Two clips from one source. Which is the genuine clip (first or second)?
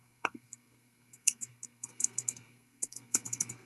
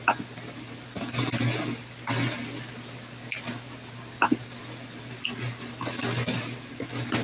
second